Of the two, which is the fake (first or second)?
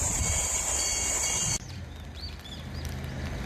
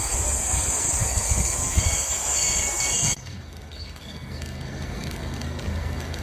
second